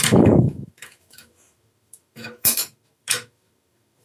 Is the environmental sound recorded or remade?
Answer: remade